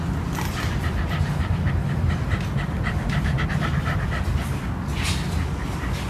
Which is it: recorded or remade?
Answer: recorded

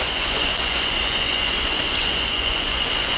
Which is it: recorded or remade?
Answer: remade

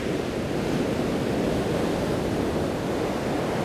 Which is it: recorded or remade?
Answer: recorded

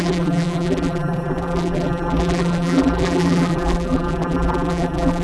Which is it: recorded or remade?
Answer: remade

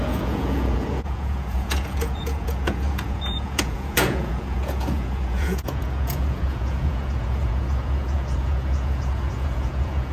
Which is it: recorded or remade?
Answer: remade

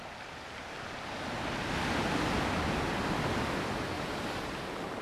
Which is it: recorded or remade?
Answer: recorded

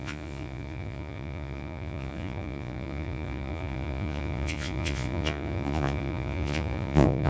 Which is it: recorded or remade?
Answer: remade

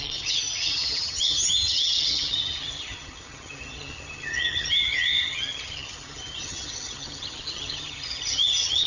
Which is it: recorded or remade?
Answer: remade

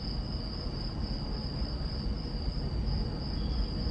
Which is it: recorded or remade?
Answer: remade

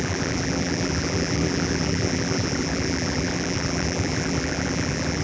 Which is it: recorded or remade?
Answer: remade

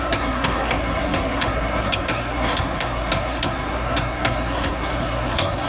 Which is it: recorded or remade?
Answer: remade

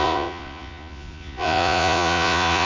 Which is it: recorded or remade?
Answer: remade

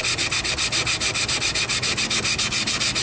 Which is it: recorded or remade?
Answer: recorded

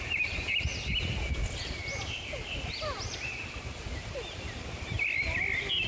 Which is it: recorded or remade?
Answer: recorded